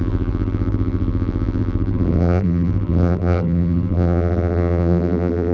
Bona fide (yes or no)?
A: no